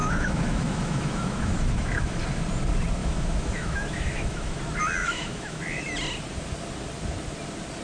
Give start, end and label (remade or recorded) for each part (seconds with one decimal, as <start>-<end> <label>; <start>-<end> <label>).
0.0-2.2 remade; 2.2-3.0 recorded; 3.0-4.6 remade; 4.6-5.0 recorded; 5.0-5.6 remade; 5.6-7.8 recorded